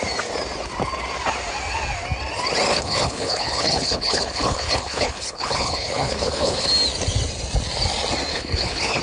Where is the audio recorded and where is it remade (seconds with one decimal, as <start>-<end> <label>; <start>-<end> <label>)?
0.0-2.7 recorded; 2.7-6.7 remade; 6.7-8.3 recorded; 8.3-9.0 remade